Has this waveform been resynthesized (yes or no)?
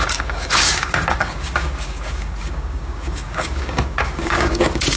yes